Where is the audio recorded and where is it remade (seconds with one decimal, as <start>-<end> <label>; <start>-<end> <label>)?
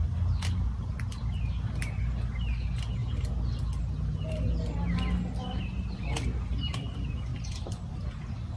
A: 0.0-8.6 recorded